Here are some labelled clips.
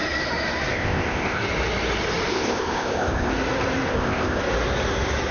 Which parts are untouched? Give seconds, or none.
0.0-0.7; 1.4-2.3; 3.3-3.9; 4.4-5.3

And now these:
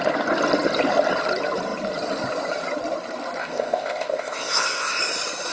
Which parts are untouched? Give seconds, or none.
0.0-3.4; 5.0-5.5

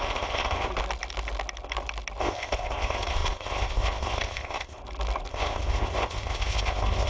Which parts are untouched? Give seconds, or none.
0.7-2.2; 4.8-5.3

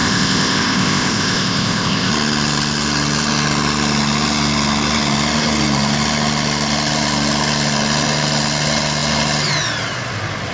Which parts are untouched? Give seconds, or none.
2.1-10.5